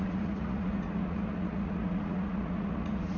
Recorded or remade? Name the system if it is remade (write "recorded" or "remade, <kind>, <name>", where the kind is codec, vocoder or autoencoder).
remade, vocoder, Vocos